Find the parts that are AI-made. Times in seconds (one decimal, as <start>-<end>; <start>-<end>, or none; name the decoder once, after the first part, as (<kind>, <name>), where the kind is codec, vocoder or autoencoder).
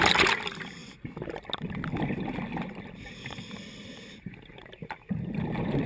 none